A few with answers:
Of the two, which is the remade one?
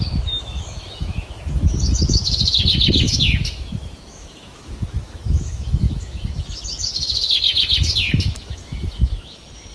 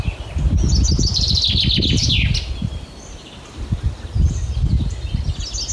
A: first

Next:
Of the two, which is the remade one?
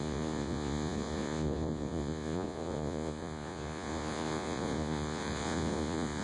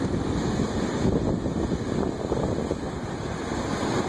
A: first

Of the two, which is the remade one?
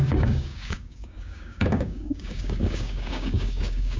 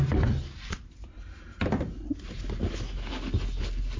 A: first